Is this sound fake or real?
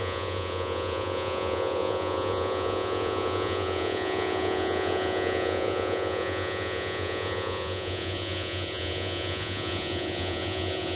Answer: fake